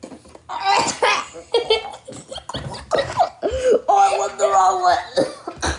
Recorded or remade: recorded